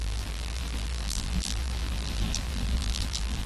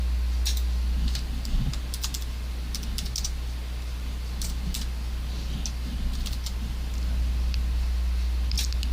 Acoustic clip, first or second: second